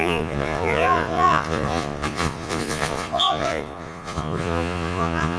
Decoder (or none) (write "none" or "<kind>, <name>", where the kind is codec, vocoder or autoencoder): vocoder, Vocos